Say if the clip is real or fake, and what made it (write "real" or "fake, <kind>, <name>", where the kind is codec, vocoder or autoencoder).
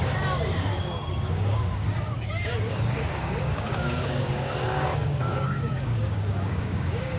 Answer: fake, codec, DAC